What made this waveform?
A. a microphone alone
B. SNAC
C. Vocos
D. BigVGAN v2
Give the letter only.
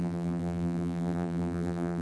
D